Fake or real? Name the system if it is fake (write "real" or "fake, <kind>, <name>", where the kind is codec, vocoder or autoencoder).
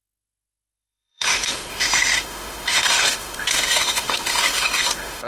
fake, autoencoder, DAC-VAE